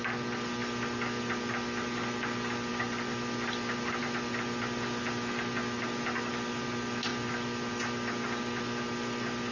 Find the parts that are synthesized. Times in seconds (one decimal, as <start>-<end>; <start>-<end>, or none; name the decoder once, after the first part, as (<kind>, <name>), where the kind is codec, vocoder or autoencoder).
2.7-4.0 (vocoder, BigVGAN v2)